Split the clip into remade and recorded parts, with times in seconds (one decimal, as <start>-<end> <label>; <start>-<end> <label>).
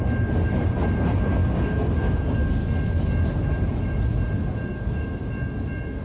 0.0-1.4 recorded; 1.4-2.5 remade; 2.5-4.7 recorded; 4.7-5.2 remade; 5.2-6.0 recorded